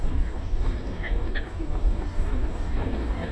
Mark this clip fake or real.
fake